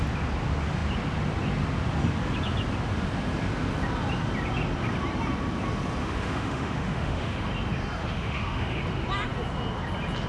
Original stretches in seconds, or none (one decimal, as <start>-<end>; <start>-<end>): 0.0-6.0; 7.5-8.0; 8.8-10.3